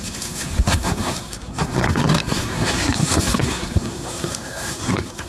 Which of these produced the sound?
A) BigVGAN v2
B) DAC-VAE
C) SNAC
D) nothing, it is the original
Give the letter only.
C